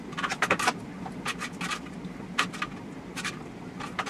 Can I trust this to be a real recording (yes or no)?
yes